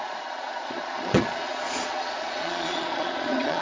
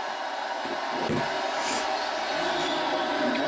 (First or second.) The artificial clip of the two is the first